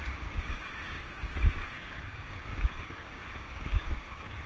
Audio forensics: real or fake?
fake